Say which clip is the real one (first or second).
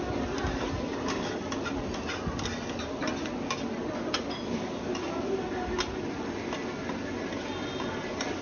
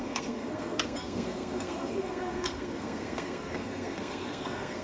first